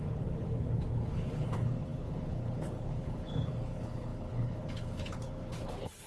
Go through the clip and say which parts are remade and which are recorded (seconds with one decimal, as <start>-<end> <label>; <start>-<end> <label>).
0.0-6.1 remade